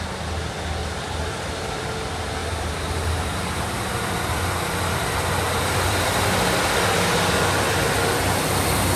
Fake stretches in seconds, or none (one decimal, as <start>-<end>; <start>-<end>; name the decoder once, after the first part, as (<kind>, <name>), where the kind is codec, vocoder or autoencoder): 0.8-1.9 (vocoder, BigVGAN v2); 2.4-6.6